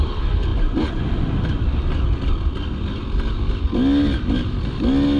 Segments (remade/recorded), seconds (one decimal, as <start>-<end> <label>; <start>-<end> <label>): 0.0-5.2 recorded